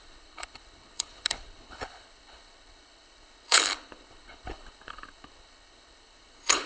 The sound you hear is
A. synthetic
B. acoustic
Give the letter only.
A